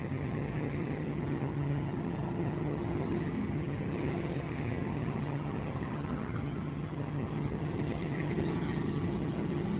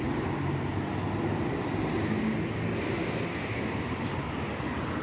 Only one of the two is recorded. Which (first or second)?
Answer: second